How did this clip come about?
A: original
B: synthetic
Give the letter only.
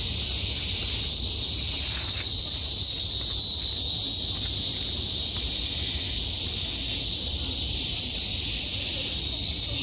A